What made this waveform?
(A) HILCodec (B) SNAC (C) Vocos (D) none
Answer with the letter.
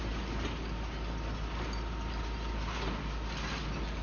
D